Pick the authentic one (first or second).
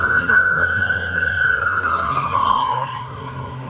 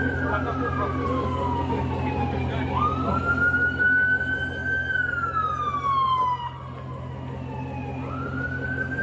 second